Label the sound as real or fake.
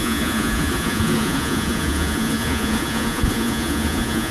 fake